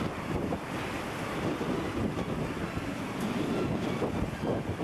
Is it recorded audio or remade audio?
recorded